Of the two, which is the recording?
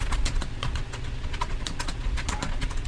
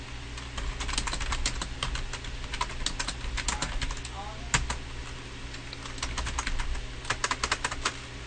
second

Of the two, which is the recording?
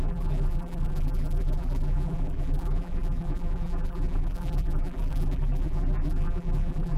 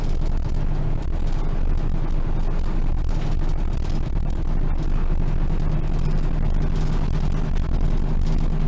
second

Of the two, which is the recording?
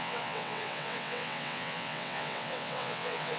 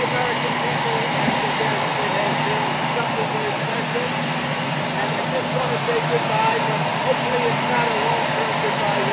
second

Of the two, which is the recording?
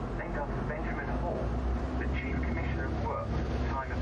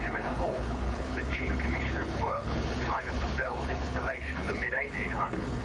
first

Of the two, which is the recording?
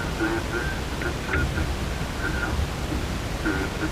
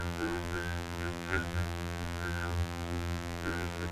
first